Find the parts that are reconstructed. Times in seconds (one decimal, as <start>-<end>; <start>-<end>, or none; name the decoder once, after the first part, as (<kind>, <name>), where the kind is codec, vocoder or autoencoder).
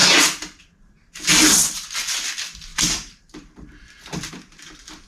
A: 2.7-4.3 (vocoder, BigVGAN v2)